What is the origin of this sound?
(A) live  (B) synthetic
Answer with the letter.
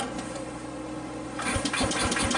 A